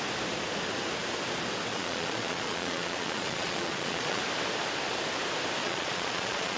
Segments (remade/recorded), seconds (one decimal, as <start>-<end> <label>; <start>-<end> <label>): 0.0-1.7 recorded; 1.7-4.2 remade; 4.2-5.6 recorded; 5.6-6.6 remade